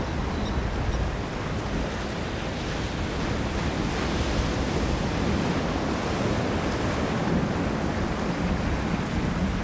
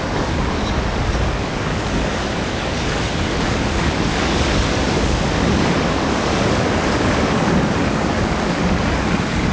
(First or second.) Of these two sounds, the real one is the first